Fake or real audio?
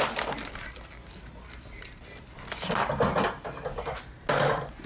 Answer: real